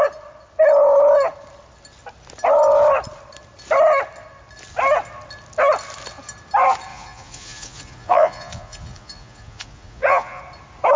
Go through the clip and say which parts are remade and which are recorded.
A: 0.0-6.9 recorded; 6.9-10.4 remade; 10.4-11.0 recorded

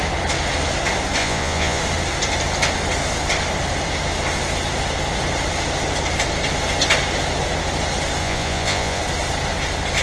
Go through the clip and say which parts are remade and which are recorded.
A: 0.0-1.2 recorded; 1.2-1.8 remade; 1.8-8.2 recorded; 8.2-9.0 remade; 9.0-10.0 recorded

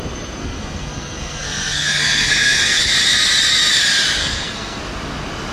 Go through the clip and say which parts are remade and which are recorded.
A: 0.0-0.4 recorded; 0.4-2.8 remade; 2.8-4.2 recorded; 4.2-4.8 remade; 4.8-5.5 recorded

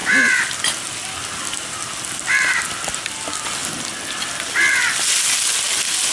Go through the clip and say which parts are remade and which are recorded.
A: 0.0-6.1 recorded